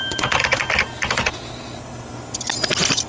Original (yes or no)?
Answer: yes